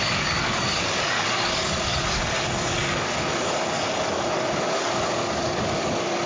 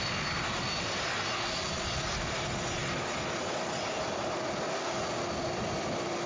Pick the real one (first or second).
second